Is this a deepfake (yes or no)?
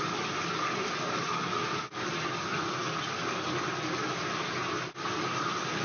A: no